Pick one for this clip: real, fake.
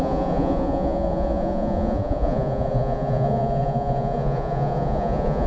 fake